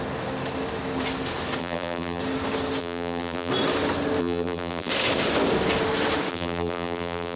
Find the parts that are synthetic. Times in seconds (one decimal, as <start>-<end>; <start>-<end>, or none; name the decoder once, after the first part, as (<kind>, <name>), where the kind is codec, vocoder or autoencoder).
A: 1.6-2.2 (vocoder, BigVGAN v2); 2.8-3.5; 4.2-4.9; 6.3-7.4